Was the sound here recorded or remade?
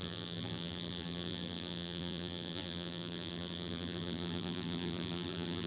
remade